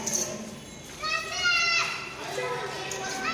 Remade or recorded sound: recorded